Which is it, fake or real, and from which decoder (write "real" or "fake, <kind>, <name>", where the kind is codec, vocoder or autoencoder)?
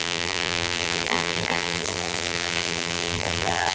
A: fake, vocoder, BigVGAN v2